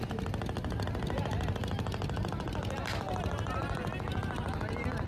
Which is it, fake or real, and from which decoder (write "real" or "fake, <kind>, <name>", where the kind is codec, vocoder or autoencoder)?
real